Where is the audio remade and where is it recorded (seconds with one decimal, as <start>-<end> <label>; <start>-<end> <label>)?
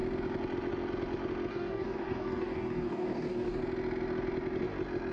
0.0-1.5 recorded; 1.5-3.6 remade; 3.6-5.1 recorded